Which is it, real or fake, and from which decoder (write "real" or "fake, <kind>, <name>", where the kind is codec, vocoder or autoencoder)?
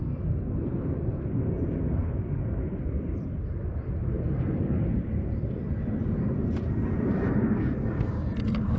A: fake, vocoder, BigVGAN v2